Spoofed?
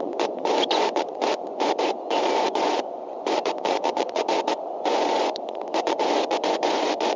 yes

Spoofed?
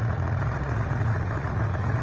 yes